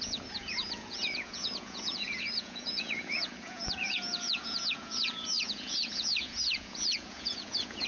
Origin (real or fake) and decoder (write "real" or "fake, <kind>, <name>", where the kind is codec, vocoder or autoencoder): fake, vocoder, Vocos